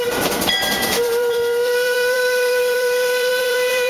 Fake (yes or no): yes